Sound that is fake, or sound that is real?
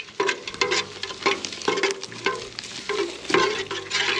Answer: real